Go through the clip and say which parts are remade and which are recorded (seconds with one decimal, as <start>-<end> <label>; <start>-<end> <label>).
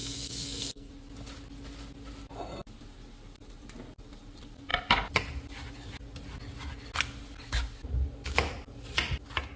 0.0-0.9 remade; 0.9-9.6 recorded